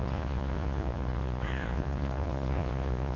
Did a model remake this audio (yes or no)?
yes